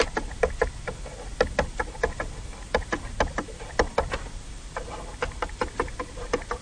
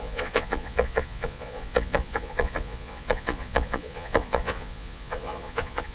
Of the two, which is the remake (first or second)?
second